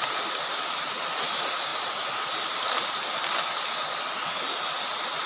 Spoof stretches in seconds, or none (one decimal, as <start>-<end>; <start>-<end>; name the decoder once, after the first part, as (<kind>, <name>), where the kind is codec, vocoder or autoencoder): none